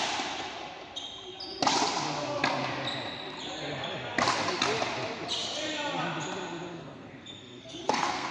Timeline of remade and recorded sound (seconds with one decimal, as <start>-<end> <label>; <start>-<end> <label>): 0.0-6.7 recorded; 6.7-8.3 remade